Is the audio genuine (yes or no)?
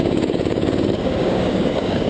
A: no